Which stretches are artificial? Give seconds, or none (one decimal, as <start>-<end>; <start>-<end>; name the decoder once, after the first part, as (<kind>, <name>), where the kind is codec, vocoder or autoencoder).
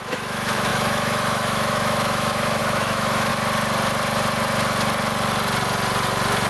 0.0-3.3 (autoencoder, DAC-VAE)